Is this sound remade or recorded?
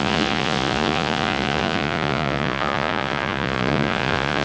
remade